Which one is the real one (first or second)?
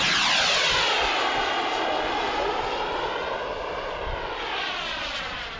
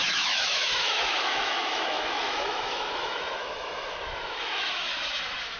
first